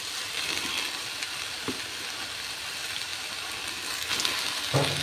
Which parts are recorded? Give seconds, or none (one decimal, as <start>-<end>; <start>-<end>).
0.0-5.0